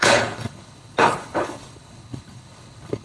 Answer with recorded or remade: remade